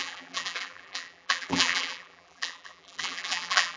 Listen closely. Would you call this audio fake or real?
fake